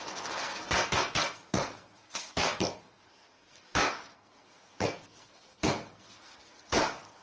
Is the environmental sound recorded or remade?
remade